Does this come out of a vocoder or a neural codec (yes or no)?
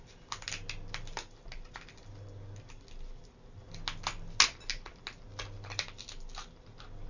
no